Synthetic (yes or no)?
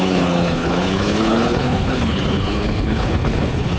yes